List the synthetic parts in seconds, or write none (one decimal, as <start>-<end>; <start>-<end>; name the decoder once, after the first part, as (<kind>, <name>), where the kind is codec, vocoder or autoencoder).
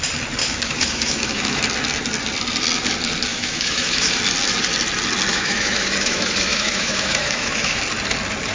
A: 0.4-1.6 (autoencoder, DAC-VAE); 3.3-4.2; 5.3-7.8